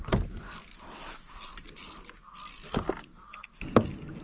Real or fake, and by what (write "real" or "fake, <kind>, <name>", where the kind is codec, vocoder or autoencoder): real